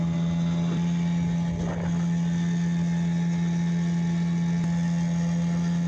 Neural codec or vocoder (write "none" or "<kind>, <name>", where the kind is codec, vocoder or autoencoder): none